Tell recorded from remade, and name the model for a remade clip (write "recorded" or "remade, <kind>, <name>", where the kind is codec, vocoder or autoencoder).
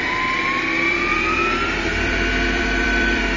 remade, vocoder, BigVGAN v2